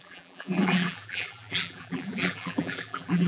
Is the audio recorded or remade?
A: remade